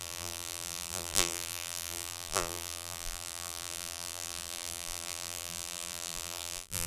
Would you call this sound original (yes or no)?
no